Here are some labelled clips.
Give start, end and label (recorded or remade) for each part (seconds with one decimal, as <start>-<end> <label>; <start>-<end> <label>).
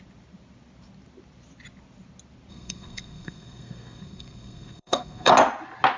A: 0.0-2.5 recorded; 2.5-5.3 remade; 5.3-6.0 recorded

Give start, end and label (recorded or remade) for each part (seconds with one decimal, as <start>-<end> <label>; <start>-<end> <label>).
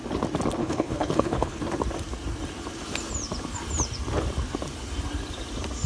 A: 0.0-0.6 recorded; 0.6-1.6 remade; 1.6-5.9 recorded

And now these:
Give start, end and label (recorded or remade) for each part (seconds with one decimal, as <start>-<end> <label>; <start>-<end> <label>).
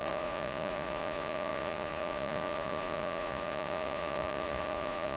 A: 0.0-5.2 remade